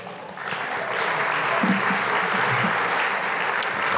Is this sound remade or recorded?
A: recorded